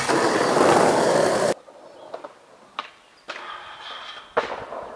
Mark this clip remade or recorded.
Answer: recorded